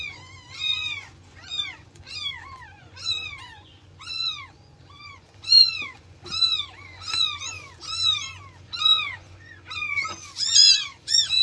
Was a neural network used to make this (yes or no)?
yes